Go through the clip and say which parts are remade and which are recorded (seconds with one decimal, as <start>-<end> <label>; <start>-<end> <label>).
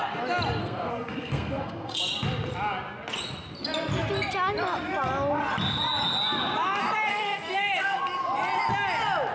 0.0-0.6 recorded; 0.6-2.0 remade; 2.0-7.1 recorded; 7.1-8.0 remade; 8.0-9.3 recorded